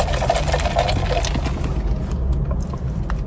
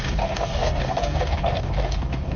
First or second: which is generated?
second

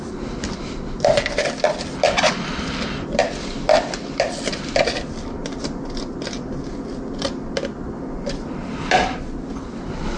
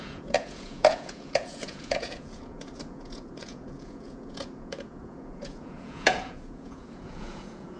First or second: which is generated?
second